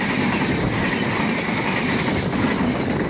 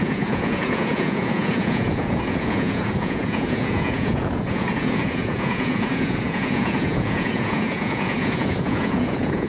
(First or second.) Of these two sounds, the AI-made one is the second